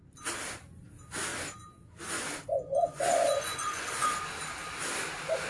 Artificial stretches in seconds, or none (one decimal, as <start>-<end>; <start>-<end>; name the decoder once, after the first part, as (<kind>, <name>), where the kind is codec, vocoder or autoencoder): 2.5-4.2 (vocoder, Vocos)